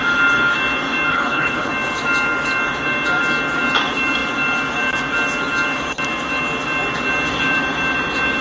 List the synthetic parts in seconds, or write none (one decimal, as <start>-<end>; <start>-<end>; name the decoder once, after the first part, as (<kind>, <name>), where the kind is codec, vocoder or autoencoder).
1.1-1.7 (codec, HILCodec)